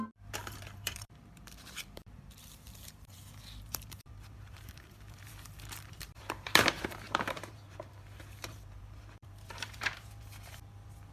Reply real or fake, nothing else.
fake